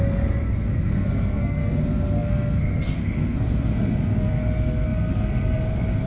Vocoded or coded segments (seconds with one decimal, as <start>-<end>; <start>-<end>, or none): 0.0-6.1